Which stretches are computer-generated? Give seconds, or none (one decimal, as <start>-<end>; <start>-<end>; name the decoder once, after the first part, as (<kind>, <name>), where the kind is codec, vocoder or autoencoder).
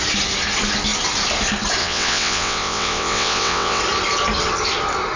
1.8-3.8 (vocoder, WaveNeXt)